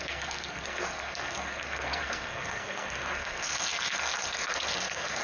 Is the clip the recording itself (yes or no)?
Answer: no